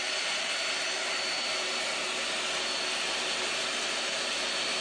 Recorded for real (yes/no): yes